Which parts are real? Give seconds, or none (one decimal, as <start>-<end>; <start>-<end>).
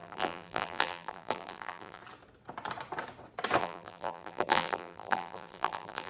2.0-3.6